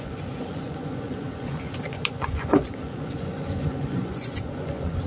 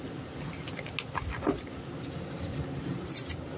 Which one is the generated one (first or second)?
first